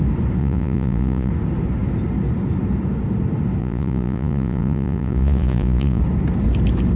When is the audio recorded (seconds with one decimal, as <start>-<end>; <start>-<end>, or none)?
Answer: 0.0-0.4; 1.3-3.6; 6.0-7.0